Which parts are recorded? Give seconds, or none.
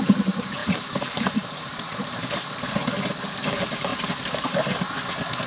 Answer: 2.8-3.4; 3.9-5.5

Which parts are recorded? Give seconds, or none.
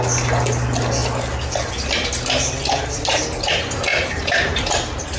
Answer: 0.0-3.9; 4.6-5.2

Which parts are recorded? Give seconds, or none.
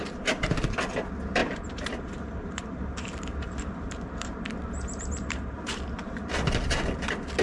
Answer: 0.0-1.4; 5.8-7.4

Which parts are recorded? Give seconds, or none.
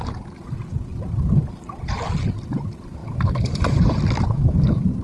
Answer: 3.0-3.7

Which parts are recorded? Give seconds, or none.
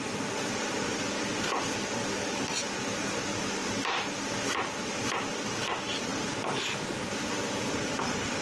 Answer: 0.0-6.1; 6.9-8.4